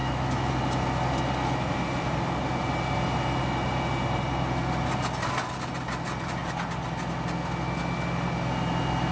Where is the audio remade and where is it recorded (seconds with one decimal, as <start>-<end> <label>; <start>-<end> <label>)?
0.0-0.5 remade; 0.5-9.1 recorded

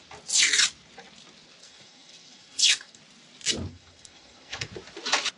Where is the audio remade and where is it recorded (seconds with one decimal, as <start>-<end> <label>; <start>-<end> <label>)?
0.0-1.6 recorded; 1.6-3.0 remade; 3.0-3.7 recorded; 3.7-4.7 remade; 4.7-5.4 recorded

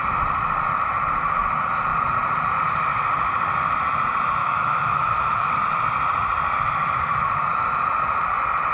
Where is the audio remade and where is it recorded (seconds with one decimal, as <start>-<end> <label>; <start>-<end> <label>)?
0.0-4.4 recorded; 4.4-5.6 remade; 5.6-8.7 recorded

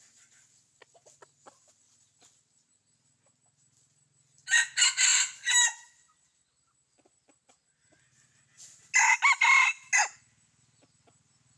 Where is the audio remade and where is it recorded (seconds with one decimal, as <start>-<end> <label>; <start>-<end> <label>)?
0.0-11.6 recorded

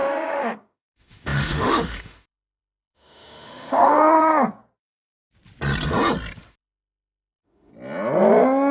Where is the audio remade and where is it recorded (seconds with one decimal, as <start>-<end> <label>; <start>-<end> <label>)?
0.0-4.3 remade; 4.3-6.5 recorded; 6.5-7.7 remade; 7.7-8.7 recorded